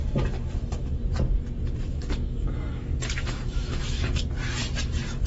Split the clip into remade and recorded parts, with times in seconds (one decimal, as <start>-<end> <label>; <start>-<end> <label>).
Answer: 0.0-1.9 recorded; 1.9-4.2 remade; 4.2-5.3 recorded